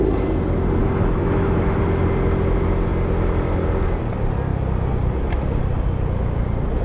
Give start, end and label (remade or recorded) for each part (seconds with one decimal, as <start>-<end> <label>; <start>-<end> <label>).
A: 0.0-0.8 recorded; 0.8-1.8 remade; 1.8-6.8 recorded

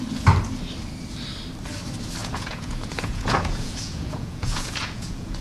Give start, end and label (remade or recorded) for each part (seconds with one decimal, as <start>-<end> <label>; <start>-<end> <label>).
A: 0.0-2.2 recorded; 2.2-5.4 remade

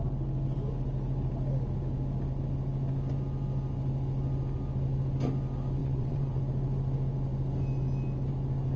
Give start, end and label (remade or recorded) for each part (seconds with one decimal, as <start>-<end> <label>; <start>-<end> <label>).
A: 0.0-5.8 recorded; 5.8-6.4 remade; 6.4-8.8 recorded